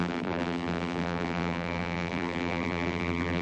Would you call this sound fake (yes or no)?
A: yes